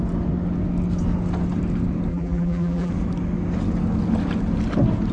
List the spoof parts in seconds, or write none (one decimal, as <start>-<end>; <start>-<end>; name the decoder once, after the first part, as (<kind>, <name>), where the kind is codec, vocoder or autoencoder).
2.1-2.9 (vocoder, BigVGAN v2)